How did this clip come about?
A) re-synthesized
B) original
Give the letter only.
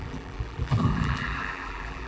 A